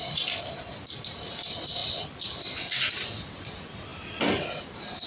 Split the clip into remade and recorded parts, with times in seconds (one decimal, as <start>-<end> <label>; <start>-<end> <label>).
0.0-5.1 recorded